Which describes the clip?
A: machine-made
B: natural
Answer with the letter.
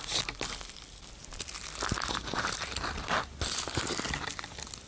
B